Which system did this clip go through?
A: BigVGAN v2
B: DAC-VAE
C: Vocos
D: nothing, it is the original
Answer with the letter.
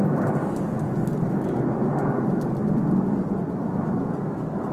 D